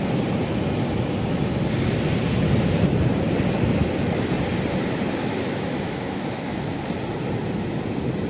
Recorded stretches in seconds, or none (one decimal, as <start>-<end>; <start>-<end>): 0.0-5.2; 6.7-8.3

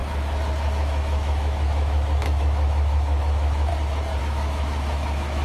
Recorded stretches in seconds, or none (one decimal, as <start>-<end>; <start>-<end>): 0.0-0.8; 3.7-4.2

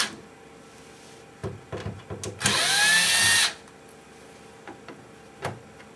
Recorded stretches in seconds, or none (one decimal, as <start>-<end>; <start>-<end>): 0.0-6.0